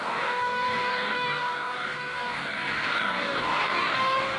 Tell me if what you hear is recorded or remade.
remade